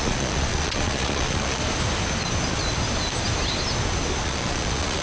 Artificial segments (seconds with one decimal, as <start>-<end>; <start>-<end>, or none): 0.0-1.6; 4.2-5.0